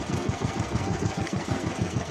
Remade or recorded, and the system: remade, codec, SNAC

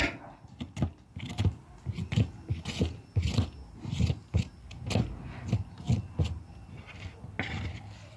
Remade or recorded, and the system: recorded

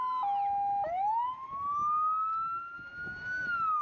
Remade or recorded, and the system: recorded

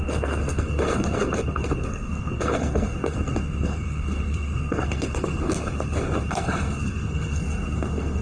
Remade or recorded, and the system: remade, codec, SNAC